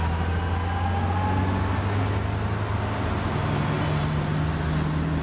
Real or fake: real